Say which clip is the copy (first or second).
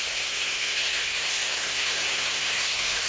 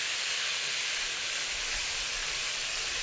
first